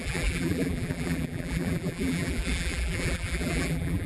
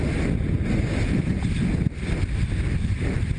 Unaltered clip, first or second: second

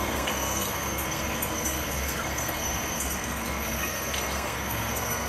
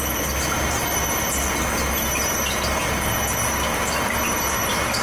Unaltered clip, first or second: second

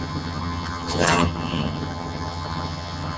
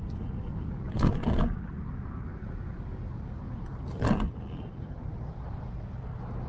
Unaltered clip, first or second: second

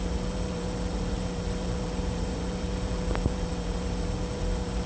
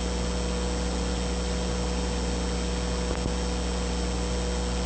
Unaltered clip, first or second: second